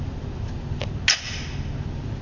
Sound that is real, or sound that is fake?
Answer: real